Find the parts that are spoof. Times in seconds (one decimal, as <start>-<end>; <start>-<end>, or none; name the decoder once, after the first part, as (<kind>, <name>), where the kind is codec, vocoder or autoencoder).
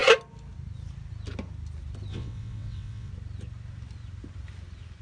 2.1-3.1 (vocoder, WaveNeXt)